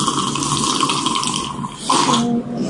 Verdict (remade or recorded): recorded